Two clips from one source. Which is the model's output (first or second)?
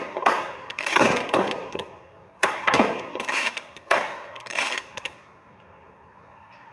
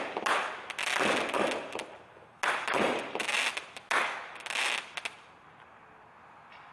first